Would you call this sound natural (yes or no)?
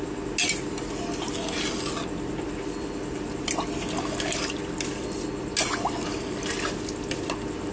yes